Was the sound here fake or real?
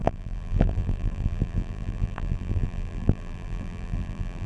fake